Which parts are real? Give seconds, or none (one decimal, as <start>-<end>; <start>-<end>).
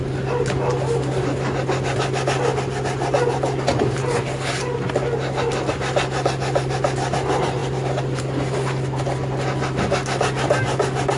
0.0-11.2